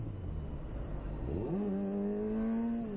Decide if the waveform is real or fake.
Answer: real